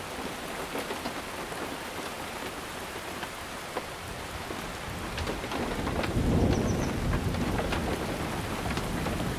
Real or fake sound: real